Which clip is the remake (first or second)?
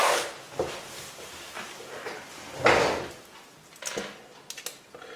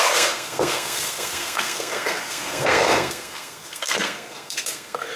second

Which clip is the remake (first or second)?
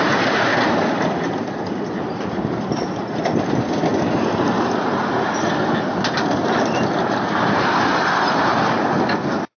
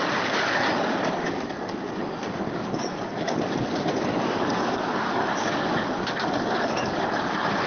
second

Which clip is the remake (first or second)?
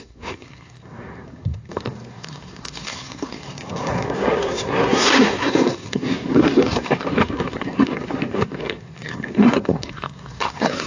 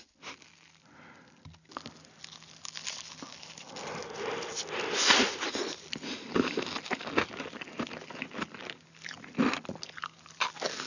first